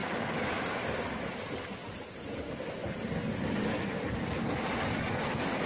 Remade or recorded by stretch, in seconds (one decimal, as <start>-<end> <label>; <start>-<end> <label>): 0.0-0.9 recorded; 0.9-2.8 remade; 2.8-4.4 recorded; 4.4-5.7 remade